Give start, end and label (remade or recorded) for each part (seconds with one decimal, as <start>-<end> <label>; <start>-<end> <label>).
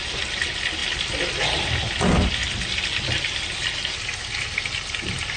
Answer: 0.0-5.4 recorded